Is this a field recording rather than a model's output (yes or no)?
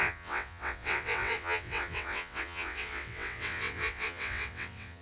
no